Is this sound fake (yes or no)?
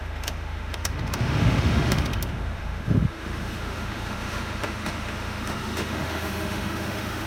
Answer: yes